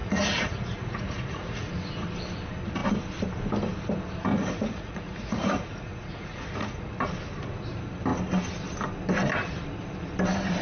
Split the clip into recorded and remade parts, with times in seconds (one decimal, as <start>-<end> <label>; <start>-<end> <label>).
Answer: 0.0-1.7 remade; 1.7-4.3 recorded; 4.3-6.9 remade; 6.9-10.6 recorded

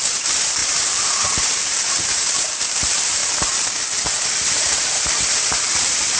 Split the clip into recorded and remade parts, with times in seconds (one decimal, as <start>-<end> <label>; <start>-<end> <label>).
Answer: 0.0-3.2 remade; 3.2-4.3 recorded; 4.3-6.2 remade

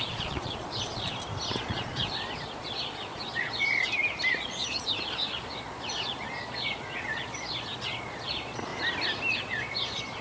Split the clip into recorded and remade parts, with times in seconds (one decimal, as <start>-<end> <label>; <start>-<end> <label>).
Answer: 0.0-1.1 remade; 1.1-1.6 recorded; 1.6-3.7 remade; 3.7-4.3 recorded; 4.3-8.7 remade; 8.7-9.3 recorded; 9.3-10.2 remade

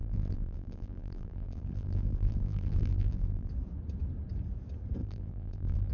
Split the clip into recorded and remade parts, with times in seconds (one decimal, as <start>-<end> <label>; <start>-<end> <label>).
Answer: 0.0-3.5 remade; 3.5-5.0 recorded; 5.0-5.9 remade